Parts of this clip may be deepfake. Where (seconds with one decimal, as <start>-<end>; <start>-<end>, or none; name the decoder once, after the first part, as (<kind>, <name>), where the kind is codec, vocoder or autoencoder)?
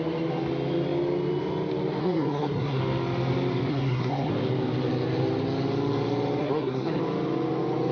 2.0-2.8 (codec, SNAC); 3.7-4.3; 6.4-7.0